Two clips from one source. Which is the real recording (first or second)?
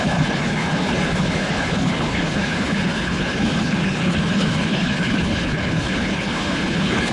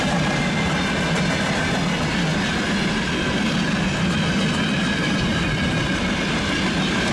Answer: second